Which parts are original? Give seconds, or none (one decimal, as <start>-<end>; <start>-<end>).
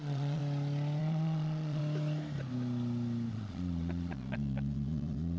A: 0.4-1.0; 1.8-3.3